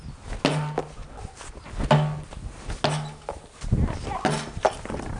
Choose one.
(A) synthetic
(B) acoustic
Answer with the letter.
B